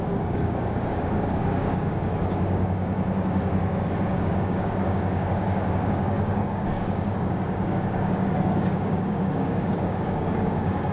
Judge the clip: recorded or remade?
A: remade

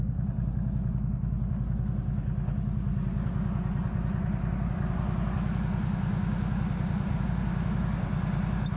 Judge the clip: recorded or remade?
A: recorded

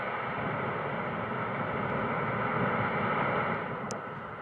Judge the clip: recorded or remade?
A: recorded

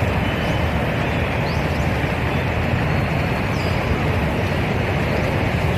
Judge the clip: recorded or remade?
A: recorded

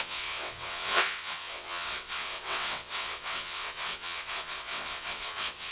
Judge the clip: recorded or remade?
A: remade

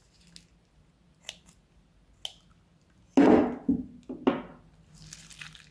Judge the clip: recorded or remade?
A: recorded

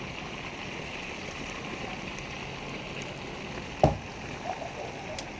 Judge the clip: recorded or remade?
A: recorded